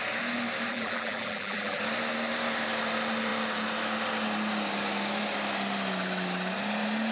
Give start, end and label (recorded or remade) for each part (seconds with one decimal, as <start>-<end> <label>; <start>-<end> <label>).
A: 0.0-0.7 recorded; 0.7-1.8 remade; 1.8-7.1 recorded